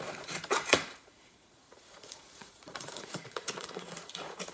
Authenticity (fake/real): fake